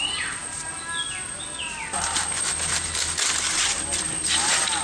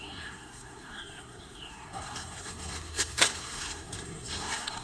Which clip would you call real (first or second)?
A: first